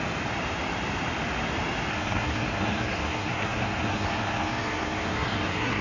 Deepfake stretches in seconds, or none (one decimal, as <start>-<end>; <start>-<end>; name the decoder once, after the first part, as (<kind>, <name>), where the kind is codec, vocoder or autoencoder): 1.9-5.8 (codec, SNAC)